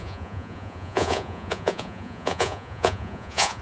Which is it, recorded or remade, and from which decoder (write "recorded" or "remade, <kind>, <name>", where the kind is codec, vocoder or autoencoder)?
remade, vocoder, Vocos